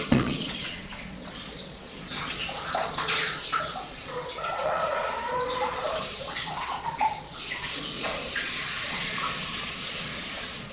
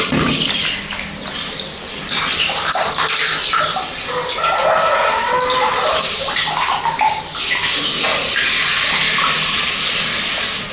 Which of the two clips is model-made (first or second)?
first